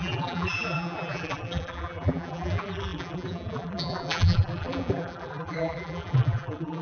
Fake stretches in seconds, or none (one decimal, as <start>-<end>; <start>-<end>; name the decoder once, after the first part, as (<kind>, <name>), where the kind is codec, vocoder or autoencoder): 0.0-6.8 (vocoder, BigVGAN v2)